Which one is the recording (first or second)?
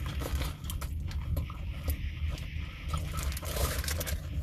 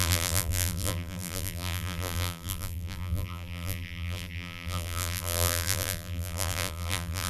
first